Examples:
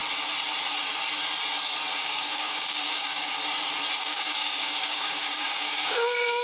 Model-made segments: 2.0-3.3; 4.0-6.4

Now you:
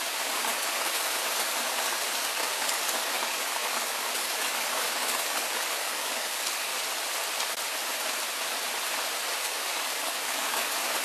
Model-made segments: 0.0-6.7; 9.4-11.0

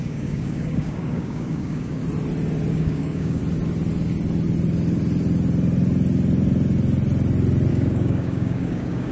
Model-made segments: 0.0-2.0; 2.7-3.4; 7.7-9.1

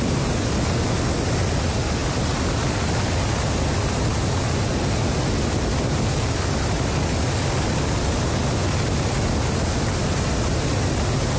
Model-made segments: none

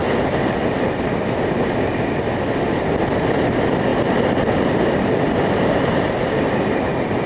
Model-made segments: none